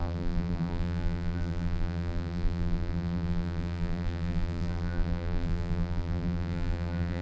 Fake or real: fake